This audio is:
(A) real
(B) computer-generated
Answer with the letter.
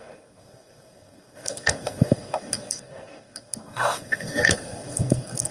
B